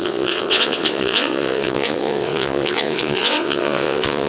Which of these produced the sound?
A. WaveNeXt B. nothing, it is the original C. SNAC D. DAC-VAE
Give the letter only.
A